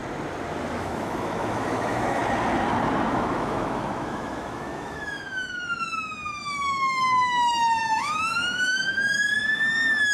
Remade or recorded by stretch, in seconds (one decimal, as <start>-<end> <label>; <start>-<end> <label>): 0.0-0.8 recorded; 0.8-2.2 remade; 2.2-3.1 recorded; 3.1-10.1 remade